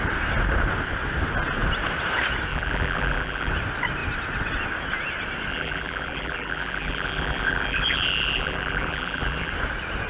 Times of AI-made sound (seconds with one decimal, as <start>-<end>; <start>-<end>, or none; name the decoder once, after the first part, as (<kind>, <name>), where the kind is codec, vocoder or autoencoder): 2.5-3.5 (vocoder, BigVGAN v2); 5.5-9.5